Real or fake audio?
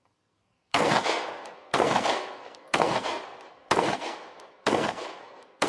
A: fake